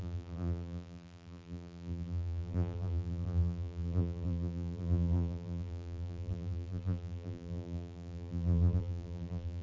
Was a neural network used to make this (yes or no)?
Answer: yes